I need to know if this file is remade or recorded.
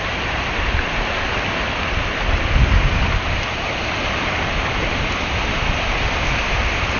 recorded